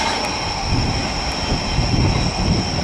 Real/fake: real